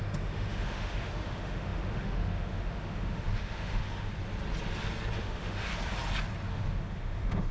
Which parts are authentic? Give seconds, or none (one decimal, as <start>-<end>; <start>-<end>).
4.1-5.2; 5.7-6.5